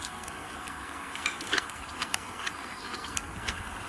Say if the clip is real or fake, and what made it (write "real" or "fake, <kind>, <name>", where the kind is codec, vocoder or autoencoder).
fake, codec, SNAC